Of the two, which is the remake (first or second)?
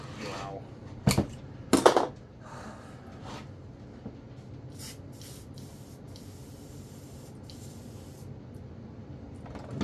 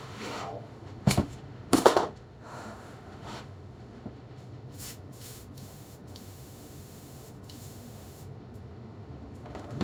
second